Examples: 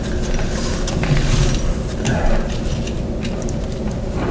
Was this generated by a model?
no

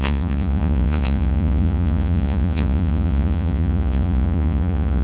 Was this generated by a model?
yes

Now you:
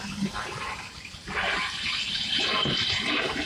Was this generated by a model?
yes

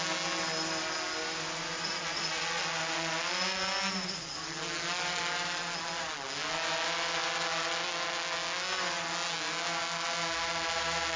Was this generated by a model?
no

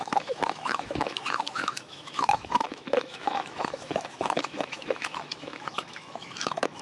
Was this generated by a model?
yes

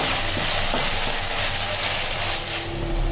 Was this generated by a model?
no